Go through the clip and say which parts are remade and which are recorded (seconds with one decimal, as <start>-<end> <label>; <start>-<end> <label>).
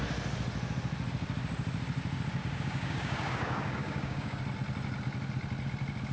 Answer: 0.0-2.4 recorded; 2.4-4.4 remade; 4.4-6.1 recorded